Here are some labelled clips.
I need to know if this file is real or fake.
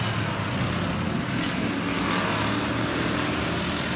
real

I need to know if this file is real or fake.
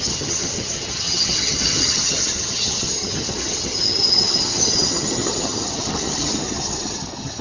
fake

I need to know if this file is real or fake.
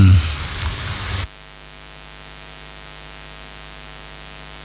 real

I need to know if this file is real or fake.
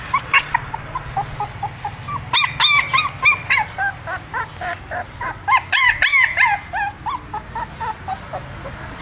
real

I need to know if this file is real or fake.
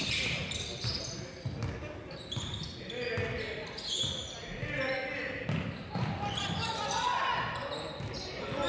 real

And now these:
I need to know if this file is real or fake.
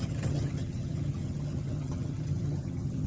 fake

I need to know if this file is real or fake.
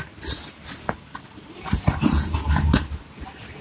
real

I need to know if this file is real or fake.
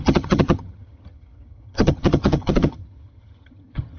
fake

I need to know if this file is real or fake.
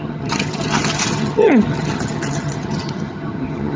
fake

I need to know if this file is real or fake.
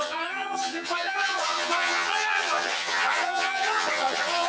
fake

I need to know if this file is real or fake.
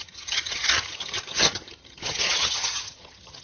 fake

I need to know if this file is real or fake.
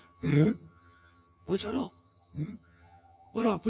fake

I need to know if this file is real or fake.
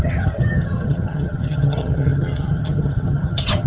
fake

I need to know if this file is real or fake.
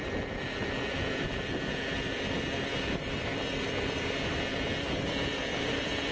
real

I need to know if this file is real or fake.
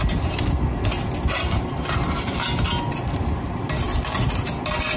real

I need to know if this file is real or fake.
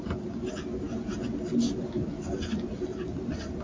real